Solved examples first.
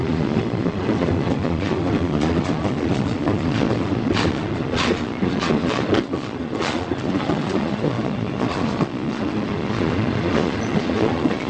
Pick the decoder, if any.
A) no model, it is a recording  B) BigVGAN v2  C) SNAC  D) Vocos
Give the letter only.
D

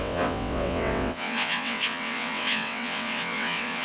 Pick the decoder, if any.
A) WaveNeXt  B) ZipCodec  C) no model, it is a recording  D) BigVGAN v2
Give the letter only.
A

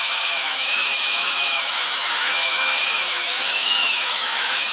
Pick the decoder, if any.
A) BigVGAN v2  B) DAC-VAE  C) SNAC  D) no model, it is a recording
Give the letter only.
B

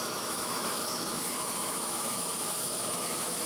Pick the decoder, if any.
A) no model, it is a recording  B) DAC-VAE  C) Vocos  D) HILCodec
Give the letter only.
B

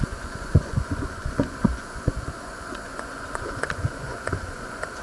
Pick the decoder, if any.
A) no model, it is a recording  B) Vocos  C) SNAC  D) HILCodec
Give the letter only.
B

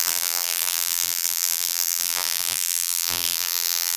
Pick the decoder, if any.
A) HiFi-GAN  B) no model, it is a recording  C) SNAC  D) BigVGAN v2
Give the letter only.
D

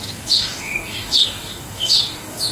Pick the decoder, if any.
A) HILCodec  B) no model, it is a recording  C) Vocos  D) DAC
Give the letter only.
D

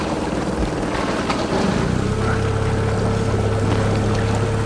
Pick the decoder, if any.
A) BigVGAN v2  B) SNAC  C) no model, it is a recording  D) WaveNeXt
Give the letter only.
C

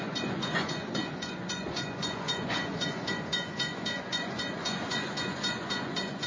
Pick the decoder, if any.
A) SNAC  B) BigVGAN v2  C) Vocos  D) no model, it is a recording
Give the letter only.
C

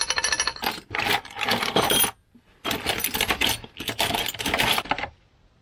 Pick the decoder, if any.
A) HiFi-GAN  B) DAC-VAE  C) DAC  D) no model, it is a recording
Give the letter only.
D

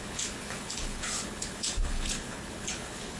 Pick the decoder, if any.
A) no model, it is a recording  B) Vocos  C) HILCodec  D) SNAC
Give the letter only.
C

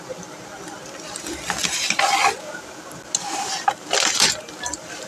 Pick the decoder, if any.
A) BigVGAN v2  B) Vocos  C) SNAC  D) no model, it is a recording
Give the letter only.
D